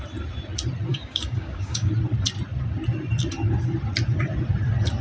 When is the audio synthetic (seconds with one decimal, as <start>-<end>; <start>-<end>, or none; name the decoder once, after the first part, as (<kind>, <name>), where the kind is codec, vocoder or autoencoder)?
0.9-1.9 (codec, DAC)